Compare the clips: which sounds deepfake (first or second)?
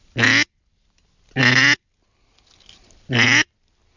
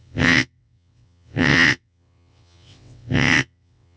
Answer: second